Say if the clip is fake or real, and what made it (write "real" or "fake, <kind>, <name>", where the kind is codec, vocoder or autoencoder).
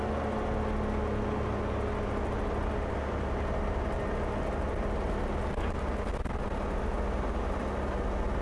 real